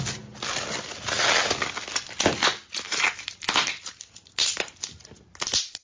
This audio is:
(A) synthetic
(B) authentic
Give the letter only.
B